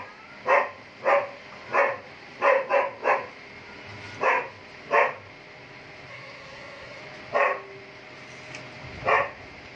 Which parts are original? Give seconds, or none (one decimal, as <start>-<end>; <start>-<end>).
0.0-6.1; 7.0-9.8